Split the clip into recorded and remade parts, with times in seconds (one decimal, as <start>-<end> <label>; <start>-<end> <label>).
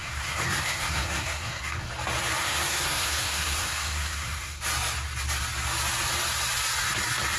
0.0-1.9 remade; 1.9-2.4 recorded; 2.4-4.6 remade; 4.6-7.4 recorded